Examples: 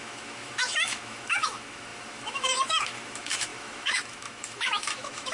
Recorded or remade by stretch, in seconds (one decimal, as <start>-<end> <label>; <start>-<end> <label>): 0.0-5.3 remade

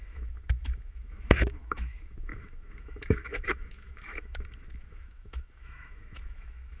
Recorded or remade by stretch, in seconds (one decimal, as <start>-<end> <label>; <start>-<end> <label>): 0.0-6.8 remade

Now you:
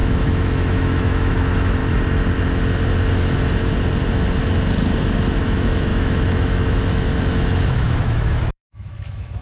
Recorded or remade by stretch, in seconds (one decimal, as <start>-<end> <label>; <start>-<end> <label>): 0.0-1.8 remade; 1.8-5.4 recorded; 5.4-9.4 remade